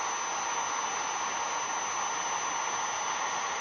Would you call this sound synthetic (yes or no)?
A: no